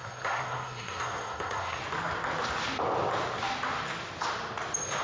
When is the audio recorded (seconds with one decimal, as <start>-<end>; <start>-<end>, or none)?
1.8-5.0